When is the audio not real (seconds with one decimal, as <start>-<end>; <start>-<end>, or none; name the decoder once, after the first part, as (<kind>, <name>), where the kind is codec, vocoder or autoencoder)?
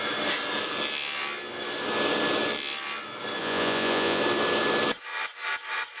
3.4-4.2 (vocoder, Vocos)